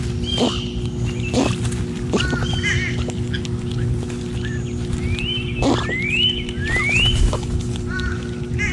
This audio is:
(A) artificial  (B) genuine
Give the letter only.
B